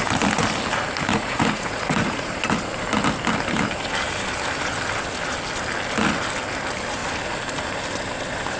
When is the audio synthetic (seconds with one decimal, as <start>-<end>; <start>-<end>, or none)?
1.1-2.3

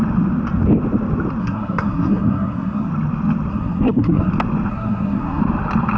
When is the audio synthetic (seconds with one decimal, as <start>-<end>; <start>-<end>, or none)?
1.4-2.9; 3.5-4.3; 4.7-5.4

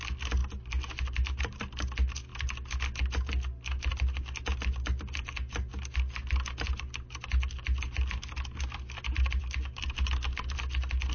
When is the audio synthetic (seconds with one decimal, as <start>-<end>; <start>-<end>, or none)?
none

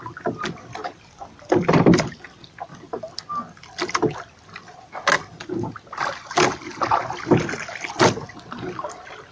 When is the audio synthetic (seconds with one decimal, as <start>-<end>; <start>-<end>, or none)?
none

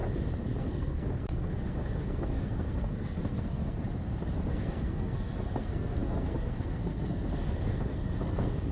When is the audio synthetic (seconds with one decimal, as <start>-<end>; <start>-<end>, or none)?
0.6-3.8; 4.5-8.7

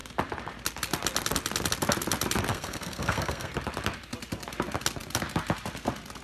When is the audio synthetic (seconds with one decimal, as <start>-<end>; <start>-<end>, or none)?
2.5-3.5